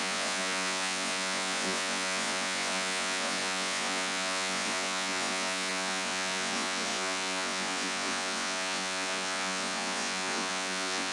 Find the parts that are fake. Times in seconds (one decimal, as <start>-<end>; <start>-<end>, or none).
0.0-11.1